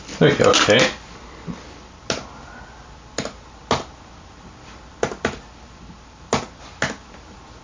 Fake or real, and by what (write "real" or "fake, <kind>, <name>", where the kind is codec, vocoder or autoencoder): real